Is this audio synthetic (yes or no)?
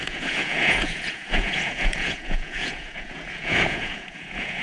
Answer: yes